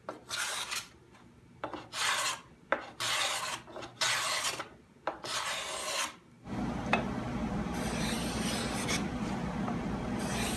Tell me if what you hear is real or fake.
real